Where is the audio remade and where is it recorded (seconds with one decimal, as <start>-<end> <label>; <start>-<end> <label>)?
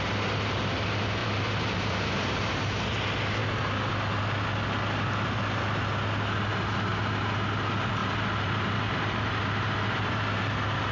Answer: 0.0-1.2 recorded; 1.2-2.6 remade; 2.6-8.0 recorded; 8.0-10.2 remade; 10.2-10.9 recorded